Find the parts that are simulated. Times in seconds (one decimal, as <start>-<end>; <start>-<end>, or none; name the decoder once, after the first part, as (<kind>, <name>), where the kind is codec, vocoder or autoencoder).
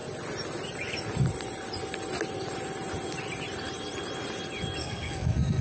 4.8-5.6 (codec, SNAC)